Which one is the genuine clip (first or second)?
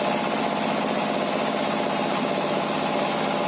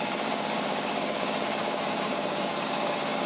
first